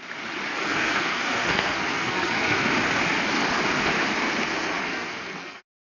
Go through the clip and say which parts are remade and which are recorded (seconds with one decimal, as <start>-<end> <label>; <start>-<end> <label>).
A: 0.0-0.5 recorded; 0.5-2.7 remade; 2.7-4.9 recorded; 4.9-5.8 remade